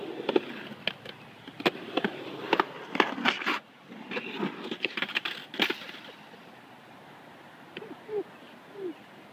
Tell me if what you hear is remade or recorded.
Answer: recorded